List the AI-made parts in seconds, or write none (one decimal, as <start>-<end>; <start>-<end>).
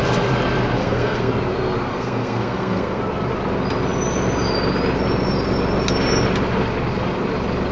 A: 0.8-1.3; 1.9-3.0